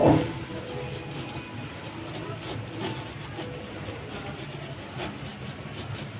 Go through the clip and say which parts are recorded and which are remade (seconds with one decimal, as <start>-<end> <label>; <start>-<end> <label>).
0.0-6.2 recorded